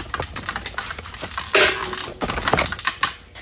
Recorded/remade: recorded